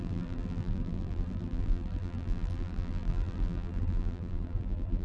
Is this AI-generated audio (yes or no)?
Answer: yes